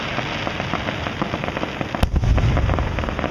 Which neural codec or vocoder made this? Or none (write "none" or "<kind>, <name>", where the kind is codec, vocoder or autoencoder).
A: none